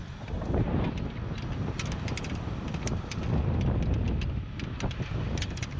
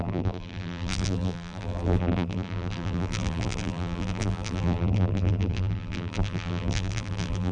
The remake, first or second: second